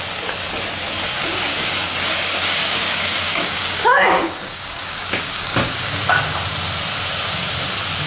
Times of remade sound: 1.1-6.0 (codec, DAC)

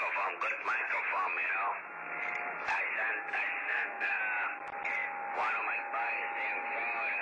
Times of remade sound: 3.6-4.2 (codec, SNAC)

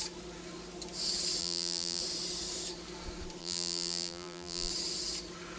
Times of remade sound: 1.4-2.0 (vocoder, BigVGAN v2); 3.4-4.7

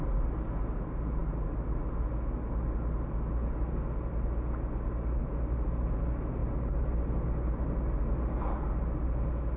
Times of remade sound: none

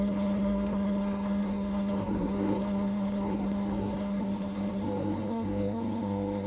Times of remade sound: 0.0-6.5 (codec, SNAC)